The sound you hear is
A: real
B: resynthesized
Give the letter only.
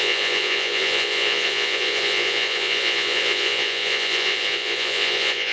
B